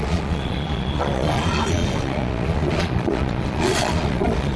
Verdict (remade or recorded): remade